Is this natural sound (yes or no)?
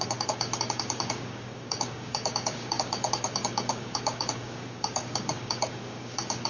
no